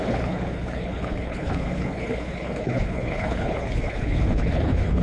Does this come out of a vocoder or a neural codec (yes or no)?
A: yes